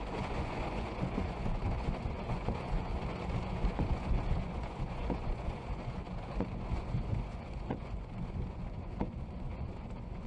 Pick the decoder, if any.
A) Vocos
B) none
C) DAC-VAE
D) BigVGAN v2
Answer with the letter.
A